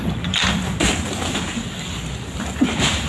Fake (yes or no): no